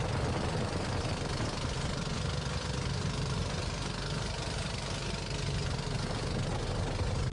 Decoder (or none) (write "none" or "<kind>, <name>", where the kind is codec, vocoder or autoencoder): none